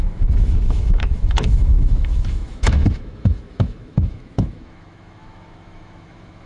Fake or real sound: fake